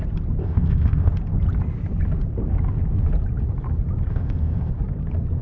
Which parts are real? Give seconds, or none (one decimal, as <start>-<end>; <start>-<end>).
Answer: 0.0-0.4; 1.1-4.1; 4.7-5.4